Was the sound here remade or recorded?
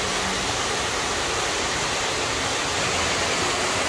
recorded